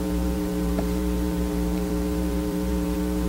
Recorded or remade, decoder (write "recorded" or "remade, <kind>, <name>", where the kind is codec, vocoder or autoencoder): remade, vocoder, BigVGAN v2